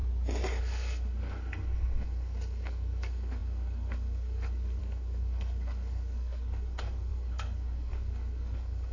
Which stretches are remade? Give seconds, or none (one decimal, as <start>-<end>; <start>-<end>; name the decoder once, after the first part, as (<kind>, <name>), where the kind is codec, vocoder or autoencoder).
0.6-8.9 (codec, SNAC)